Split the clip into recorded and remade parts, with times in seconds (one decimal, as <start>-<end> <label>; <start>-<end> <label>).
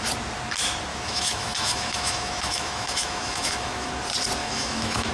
0.0-0.9 recorded; 0.9-3.9 remade; 3.9-4.4 recorded; 4.4-5.1 remade